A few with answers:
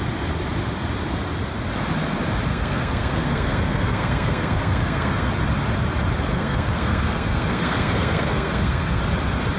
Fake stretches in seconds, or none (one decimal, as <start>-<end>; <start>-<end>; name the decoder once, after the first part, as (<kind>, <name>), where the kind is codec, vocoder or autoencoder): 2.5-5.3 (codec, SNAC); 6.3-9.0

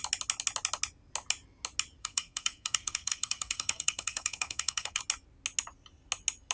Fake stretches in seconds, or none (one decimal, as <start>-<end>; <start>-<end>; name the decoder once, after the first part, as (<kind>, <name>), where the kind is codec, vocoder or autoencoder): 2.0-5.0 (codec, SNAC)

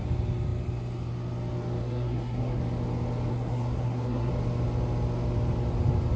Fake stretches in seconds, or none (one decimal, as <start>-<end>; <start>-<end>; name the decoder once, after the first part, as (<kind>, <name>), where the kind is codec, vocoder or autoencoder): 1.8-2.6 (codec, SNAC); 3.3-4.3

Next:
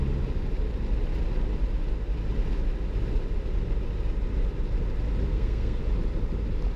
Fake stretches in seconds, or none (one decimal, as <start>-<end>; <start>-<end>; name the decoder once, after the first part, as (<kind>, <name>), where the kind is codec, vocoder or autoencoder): 5.3-5.8 (codec, SNAC)

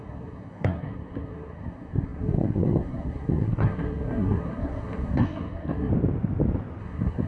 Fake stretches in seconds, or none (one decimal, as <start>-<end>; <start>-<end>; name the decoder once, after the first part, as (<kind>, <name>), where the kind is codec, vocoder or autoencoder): 0.0-5.9 (codec, SNAC); 6.8-7.3